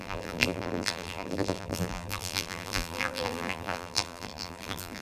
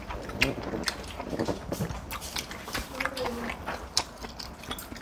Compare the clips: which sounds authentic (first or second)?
second